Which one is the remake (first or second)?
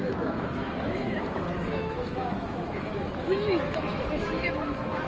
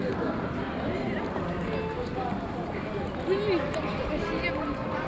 first